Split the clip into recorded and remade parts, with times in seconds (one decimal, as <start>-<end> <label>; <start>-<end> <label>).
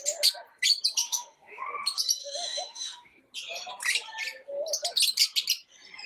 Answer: 0.0-1.0 recorded; 1.0-1.6 remade; 1.6-2.2 recorded; 2.2-3.2 remade; 3.2-6.1 recorded